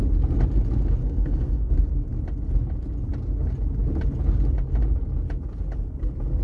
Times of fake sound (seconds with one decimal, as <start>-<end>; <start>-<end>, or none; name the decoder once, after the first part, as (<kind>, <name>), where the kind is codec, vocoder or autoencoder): 1.0-1.7 (codec, SNAC)